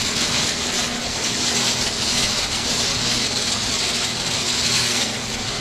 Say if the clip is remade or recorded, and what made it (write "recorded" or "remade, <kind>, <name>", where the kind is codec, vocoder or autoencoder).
remade, codec, SNAC